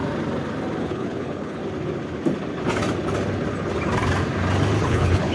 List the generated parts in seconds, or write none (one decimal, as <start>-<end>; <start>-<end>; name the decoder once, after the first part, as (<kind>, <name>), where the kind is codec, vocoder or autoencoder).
0.8-1.6 (codec, HILCodec); 4.8-5.3